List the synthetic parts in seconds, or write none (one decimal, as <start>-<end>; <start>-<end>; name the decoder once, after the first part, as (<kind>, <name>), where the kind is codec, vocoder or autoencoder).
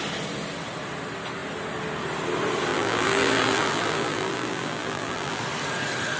2.7-5.4 (vocoder, BigVGAN v2)